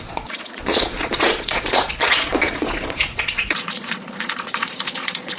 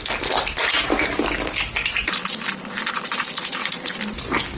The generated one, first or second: first